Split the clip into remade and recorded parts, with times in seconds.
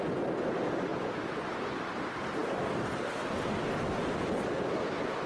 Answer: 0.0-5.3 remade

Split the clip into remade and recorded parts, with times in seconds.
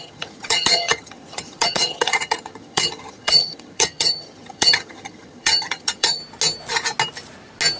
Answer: 0.0-6.2 remade; 6.2-7.8 recorded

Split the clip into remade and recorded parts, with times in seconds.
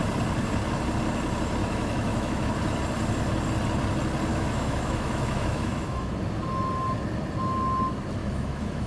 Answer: 0.0-1.6 recorded; 1.6-2.5 remade; 2.5-4.3 recorded; 4.3-6.1 remade; 6.1-8.2 recorded; 8.2-8.9 remade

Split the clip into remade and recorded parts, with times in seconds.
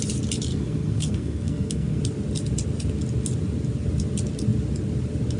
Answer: 0.0-0.5 recorded; 0.5-2.0 remade; 2.0-5.4 recorded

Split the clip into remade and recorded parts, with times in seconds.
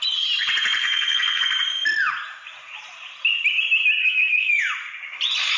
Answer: 0.0-0.8 recorded; 0.8-1.4 remade; 1.4-4.0 recorded; 4.0-4.6 remade; 4.6-5.6 recorded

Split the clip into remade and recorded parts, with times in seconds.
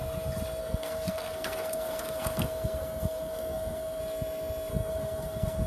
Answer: 0.0-0.6 recorded; 0.6-4.0 remade; 4.0-4.7 recorded; 4.7-5.7 remade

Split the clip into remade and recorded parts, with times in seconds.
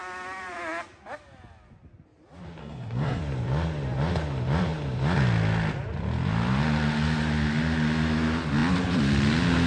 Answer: 0.0-2.6 recorded; 2.6-3.2 remade; 3.2-9.7 recorded